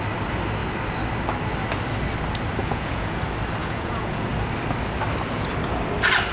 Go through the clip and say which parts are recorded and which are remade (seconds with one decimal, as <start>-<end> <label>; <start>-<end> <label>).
0.0-2.6 recorded; 2.6-3.2 remade; 3.2-3.6 recorded; 3.6-4.3 remade; 4.3-6.3 recorded